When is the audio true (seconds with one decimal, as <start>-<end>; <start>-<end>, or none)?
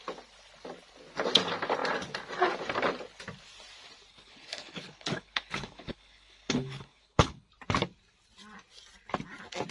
0.0-4.1; 7.5-9.7